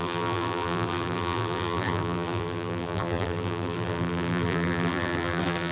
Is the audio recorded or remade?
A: remade